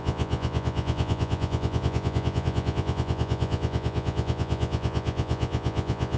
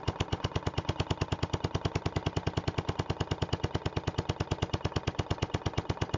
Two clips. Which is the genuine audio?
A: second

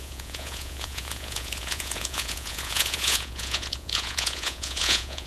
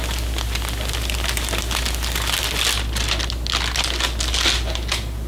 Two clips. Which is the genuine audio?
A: second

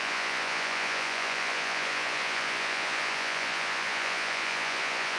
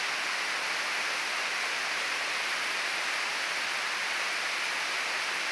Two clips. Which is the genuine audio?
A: second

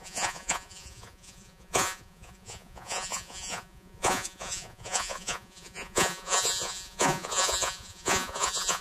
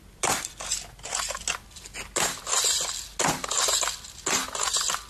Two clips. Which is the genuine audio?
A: second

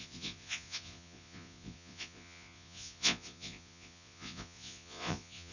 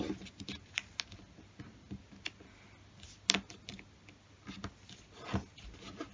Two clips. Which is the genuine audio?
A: second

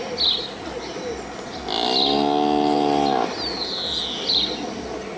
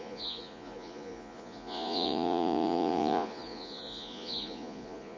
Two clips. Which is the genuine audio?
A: first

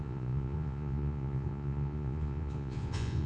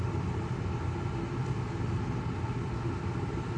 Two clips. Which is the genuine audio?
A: second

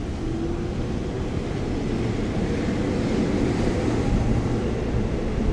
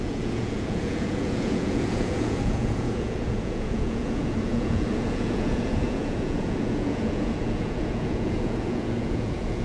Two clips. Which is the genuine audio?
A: first